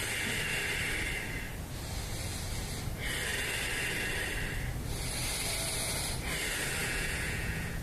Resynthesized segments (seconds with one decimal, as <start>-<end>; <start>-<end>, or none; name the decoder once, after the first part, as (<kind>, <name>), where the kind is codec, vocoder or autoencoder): 6.8-7.8 (vocoder, Vocos)

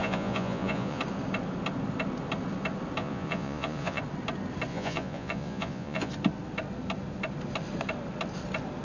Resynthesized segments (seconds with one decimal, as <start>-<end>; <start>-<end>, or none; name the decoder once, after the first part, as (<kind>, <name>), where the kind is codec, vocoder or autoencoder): 0.0-1.0 (vocoder, Vocos); 3.0-4.0; 4.7-6.1

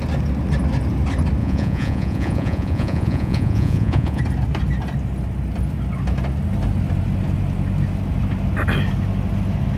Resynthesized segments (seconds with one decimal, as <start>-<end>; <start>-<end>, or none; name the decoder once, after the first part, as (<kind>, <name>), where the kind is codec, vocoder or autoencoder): 1.4-4.2 (vocoder, Vocos)

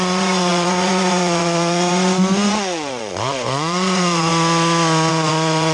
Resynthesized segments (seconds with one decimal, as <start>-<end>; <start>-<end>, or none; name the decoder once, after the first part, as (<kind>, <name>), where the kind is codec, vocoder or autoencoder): 0.0-4.3 (vocoder, Vocos); 5.1-5.7

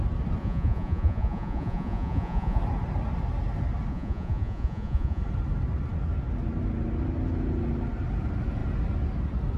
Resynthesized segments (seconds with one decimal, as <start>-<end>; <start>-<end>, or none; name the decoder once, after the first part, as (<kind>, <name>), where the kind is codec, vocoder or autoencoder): 0.4-2.6 (vocoder, Vocos); 3.9-5.2

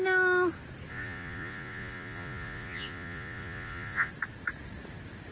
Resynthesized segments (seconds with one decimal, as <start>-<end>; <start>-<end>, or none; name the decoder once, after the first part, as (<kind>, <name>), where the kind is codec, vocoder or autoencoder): 0.9-4.1 (vocoder, Vocos)